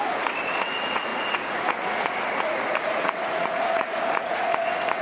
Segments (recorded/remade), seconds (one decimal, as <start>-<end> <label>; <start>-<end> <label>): 0.0-5.0 remade